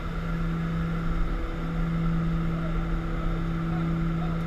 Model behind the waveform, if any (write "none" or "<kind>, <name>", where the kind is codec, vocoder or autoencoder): none